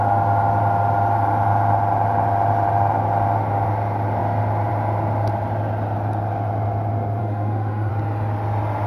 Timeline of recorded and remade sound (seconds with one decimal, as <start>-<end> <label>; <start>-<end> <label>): 0.0-7.2 recorded; 7.2-7.9 remade; 7.9-8.9 recorded

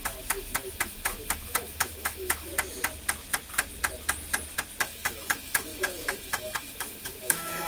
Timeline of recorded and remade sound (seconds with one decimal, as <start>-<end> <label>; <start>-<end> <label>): 0.0-2.5 remade; 2.5-4.8 recorded; 4.8-7.7 remade

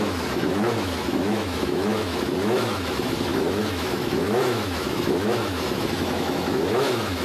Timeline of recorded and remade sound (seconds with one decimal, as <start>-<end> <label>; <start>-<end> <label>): 0.0-7.2 remade

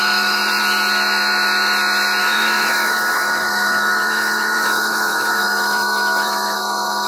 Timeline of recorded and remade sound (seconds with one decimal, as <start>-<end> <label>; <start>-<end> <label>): 0.0-0.4 remade; 0.4-2.2 recorded; 2.2-7.1 remade

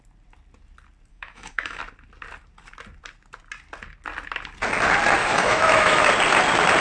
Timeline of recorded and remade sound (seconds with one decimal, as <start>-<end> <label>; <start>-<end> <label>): 0.0-1.1 recorded; 1.1-1.8 remade; 1.8-5.2 recorded; 5.2-6.1 remade; 6.1-6.8 recorded

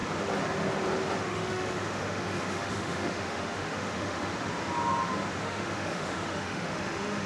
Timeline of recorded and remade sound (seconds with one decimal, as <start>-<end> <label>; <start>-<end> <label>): 0.0-1.2 recorded; 1.2-4.3 remade; 4.3-5.4 recorded; 5.4-7.3 remade

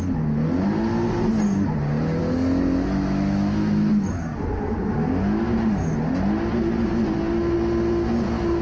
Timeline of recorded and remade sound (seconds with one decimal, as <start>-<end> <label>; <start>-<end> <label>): 0.0-2.2 recorded; 2.2-4.2 remade; 4.2-8.6 recorded

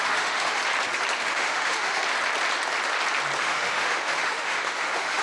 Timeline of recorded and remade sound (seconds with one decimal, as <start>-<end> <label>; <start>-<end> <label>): 0.0-0.6 remade; 0.6-1.2 recorded; 1.2-2.0 remade; 2.0-3.4 recorded; 3.4-5.2 remade